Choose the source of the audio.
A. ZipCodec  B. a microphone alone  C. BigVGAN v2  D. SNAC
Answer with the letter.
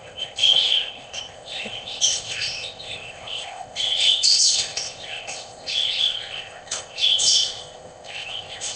A